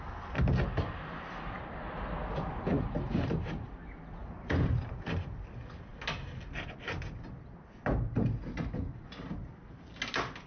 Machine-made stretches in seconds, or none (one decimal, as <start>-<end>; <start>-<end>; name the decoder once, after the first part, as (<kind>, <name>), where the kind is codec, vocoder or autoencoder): 2.7-3.7 (vocoder, BigVGAN v2); 4.2-5.5